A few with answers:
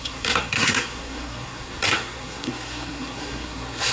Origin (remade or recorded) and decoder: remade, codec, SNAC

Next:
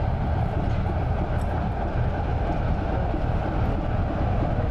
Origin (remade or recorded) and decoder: recorded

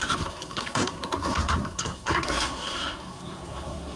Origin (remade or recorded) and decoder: remade, codec, SNAC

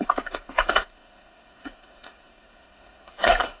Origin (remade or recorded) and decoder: remade, codec, SNAC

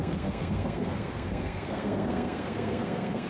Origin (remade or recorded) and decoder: remade, codec, SNAC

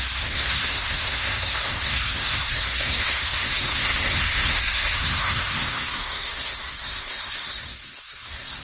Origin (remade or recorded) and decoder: remade, codec, SNAC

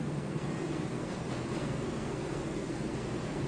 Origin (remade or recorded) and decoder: remade, codec, SNAC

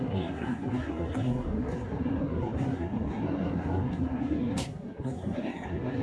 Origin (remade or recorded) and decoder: remade, codec, SNAC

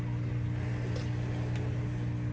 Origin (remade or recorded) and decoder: recorded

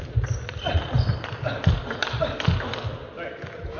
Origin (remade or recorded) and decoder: recorded